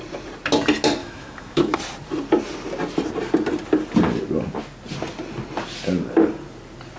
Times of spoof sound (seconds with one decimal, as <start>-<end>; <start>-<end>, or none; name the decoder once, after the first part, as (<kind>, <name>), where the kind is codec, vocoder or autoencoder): 1.0-1.8 (autoencoder, DAC-VAE)